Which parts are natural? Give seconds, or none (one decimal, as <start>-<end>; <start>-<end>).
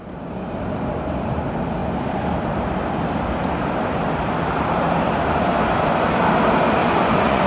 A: 0.0-6.8